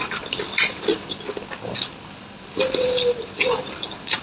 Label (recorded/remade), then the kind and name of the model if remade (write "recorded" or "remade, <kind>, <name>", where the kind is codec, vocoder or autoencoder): recorded